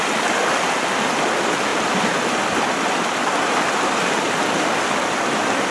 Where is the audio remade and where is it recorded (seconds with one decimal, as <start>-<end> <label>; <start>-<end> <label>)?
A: 0.0-5.7 recorded